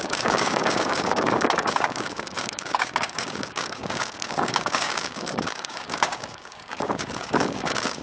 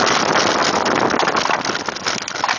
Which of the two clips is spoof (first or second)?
first